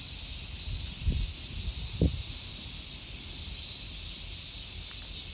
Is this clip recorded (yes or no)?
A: yes